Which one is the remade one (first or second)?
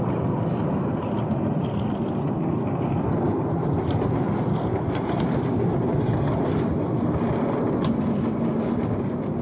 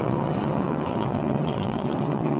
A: second